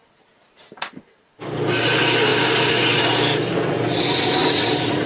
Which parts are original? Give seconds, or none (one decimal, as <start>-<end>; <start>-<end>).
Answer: 1.8-2.3; 3.0-5.1